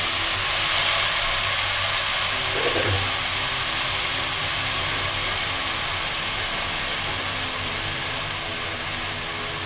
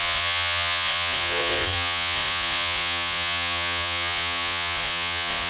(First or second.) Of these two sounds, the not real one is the second